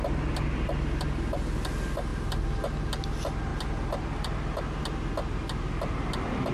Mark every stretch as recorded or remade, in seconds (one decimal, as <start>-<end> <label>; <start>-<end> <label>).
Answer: 0.0-2.1 recorded; 2.1-2.8 remade; 2.8-3.5 recorded; 3.5-4.8 remade; 4.8-6.5 recorded